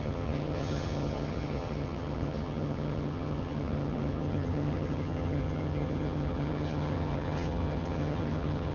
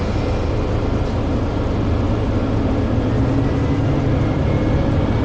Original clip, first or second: second